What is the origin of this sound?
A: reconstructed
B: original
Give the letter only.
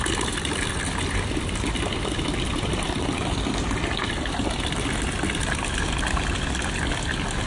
B